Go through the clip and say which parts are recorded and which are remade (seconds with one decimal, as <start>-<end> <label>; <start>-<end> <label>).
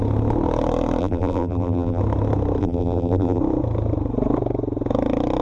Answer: 0.0-1.0 recorded; 1.0-2.0 remade; 2.0-2.6 recorded; 2.6-3.4 remade; 3.4-5.4 recorded